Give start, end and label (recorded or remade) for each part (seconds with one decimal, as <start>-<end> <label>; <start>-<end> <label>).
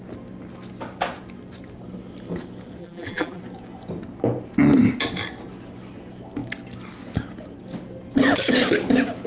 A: 0.0-2.8 recorded; 2.8-3.4 remade; 3.4-9.3 recorded